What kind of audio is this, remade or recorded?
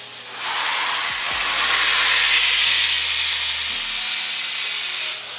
recorded